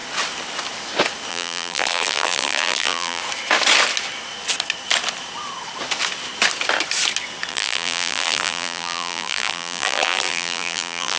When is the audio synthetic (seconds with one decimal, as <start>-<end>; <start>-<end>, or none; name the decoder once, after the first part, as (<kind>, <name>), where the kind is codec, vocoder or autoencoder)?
1.3-3.2 (vocoder, BigVGAN v2); 7.5-11.2